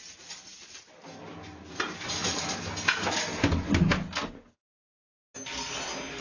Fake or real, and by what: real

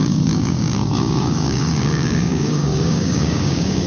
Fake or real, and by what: fake, codec, DAC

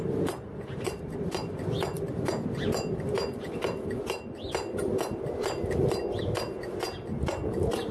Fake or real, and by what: real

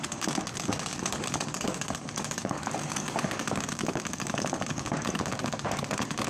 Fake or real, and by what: fake, codec, DAC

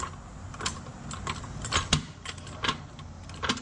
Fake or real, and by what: real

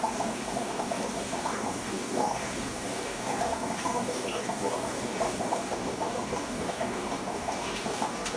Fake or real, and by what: fake, codec, DAC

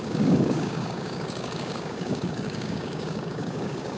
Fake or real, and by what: fake, codec, DAC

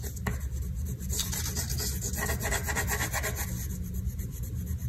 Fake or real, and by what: real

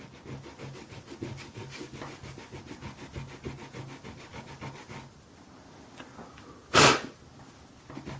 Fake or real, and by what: real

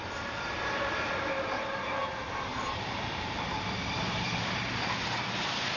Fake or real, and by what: real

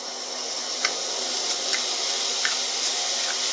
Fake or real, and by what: real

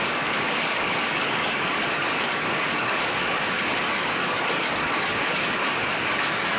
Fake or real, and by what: fake, codec, DAC